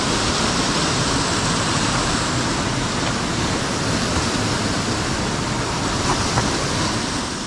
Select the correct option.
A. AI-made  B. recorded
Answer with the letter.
B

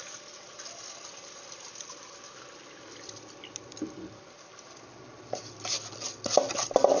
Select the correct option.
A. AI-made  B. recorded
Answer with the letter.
B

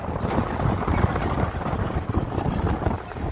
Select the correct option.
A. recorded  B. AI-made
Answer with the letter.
A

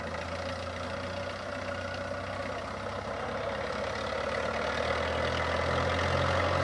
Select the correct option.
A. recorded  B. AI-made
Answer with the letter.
A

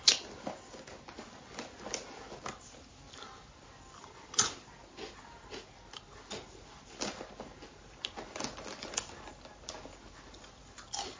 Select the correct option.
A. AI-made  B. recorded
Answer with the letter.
B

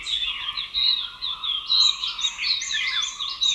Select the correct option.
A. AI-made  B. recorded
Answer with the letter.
B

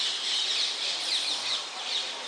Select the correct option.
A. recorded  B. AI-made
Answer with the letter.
A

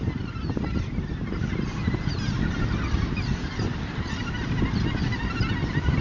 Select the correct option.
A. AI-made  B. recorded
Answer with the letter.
B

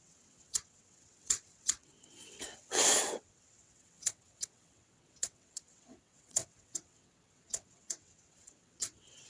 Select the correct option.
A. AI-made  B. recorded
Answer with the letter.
A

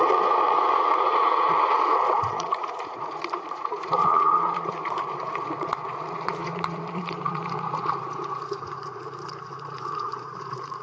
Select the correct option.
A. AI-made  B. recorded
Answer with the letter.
A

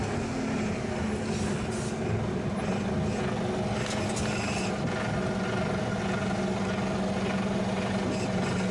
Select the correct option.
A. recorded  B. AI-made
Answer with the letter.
A